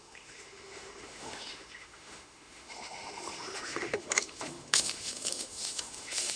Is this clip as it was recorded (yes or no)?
no